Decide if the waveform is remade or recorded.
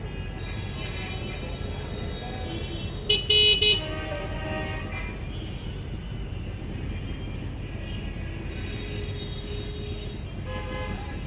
recorded